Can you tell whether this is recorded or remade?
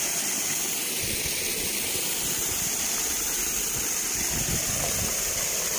remade